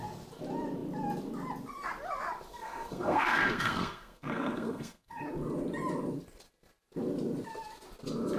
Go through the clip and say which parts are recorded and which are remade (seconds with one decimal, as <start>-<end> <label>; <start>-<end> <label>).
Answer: 0.0-2.5 recorded; 2.5-5.2 remade; 5.2-8.4 recorded